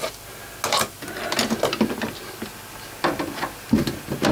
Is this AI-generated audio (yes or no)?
no